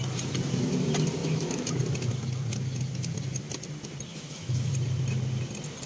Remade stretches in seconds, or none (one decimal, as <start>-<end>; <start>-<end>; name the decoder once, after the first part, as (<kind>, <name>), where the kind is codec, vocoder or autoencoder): 1.2-1.7 (autoencoder, DAC-VAE); 4.1-4.7